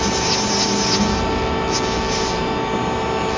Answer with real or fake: real